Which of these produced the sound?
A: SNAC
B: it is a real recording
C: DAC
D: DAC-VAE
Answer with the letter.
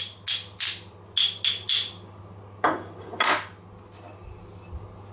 B